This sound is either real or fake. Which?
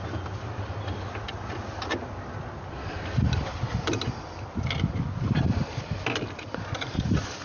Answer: real